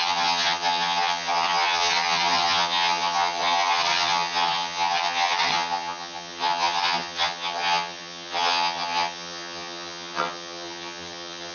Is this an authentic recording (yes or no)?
no